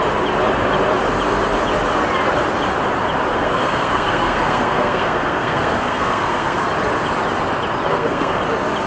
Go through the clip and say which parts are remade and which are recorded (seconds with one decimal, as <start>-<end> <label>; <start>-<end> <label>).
0.0-3.3 recorded; 3.3-6.7 remade; 6.7-7.9 recorded; 7.9-8.4 remade; 8.4-8.9 recorded